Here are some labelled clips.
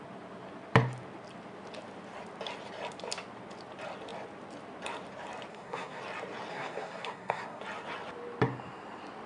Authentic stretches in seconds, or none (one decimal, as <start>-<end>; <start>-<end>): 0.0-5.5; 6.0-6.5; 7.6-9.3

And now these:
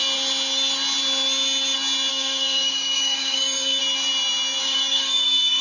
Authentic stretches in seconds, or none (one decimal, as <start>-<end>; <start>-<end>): 0.0-2.1; 3.8-4.6

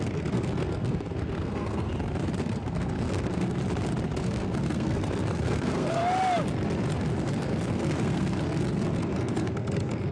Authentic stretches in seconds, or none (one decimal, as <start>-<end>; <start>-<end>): 1.9-2.4; 3.6-4.2; 6.0-7.3

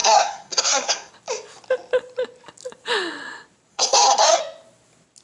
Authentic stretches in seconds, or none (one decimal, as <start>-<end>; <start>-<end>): 1.1-3.7; 4.4-5.2

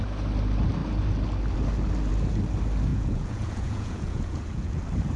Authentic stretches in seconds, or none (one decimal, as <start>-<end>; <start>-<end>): 0.0-2.9; 4.8-5.2

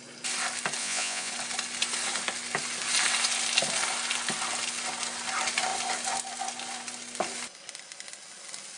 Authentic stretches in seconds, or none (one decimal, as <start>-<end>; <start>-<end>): 0.0-0.8; 1.3-8.8

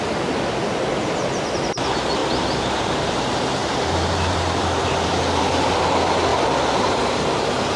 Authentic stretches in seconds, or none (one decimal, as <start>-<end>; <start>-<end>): 0.0-2.2; 3.2-3.6; 5.8-6.3

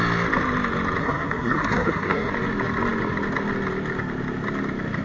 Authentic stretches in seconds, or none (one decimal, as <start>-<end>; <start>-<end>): 0.0-1.0; 2.3-5.0